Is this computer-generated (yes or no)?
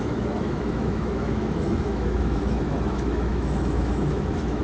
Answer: yes